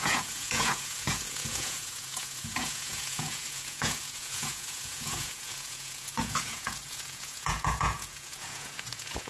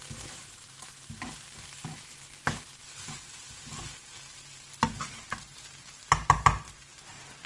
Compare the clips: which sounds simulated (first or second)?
first